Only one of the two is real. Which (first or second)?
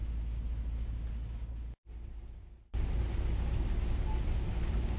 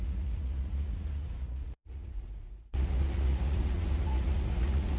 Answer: first